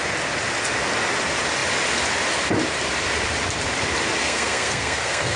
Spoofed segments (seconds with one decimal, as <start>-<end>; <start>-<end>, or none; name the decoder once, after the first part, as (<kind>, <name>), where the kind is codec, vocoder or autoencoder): 4.2-5.4 (codec, SNAC)